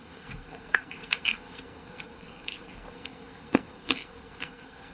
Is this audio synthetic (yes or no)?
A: yes